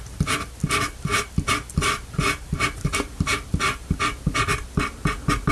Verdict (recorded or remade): remade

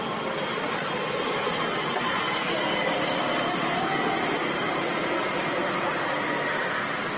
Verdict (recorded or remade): recorded